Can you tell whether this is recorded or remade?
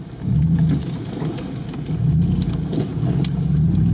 recorded